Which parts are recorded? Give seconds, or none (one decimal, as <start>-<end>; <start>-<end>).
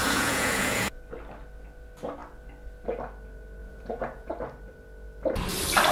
1.0-3.6; 4.3-5.9